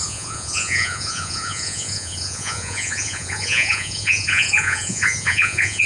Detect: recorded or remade remade